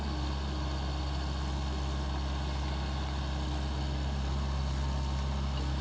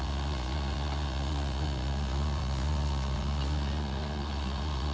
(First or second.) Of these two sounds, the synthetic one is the second